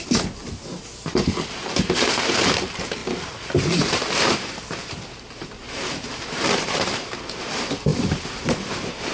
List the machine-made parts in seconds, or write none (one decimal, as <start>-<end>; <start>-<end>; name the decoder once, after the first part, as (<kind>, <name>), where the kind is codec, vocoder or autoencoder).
0.0-0.4 (vocoder, BigVGAN v2); 1.1-9.1

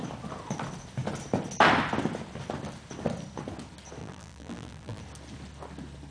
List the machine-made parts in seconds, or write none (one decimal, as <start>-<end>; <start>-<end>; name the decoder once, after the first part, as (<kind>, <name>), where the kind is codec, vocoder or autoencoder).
4.0-5.0 (vocoder, BigVGAN v2)

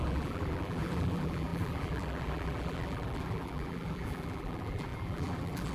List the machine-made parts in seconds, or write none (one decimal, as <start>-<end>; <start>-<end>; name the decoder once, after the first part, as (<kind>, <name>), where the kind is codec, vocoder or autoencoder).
0.0-5.7 (vocoder, BigVGAN v2)

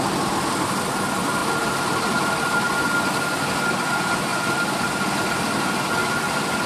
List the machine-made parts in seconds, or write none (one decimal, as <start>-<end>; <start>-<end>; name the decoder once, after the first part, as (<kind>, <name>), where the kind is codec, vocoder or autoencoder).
1.4-2.7 (vocoder, BigVGAN v2); 4.3-4.8; 6.0-6.7

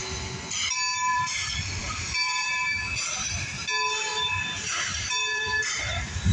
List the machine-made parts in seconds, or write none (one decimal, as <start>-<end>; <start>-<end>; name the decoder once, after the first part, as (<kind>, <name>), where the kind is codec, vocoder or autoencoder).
1.1-3.5 (vocoder, BigVGAN v2); 4.1-5.8